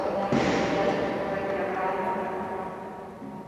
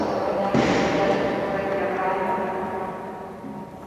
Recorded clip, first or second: second